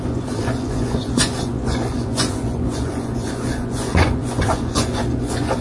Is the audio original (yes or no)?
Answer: no